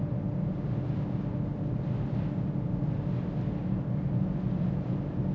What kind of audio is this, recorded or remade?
recorded